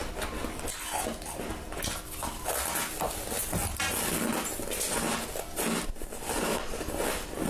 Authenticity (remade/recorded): recorded